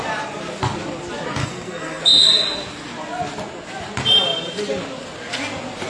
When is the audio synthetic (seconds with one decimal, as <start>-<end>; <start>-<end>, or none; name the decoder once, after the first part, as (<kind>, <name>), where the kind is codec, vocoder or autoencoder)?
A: 1.4-2.0 (codec, SNAC)